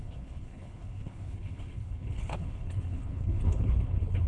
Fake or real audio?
fake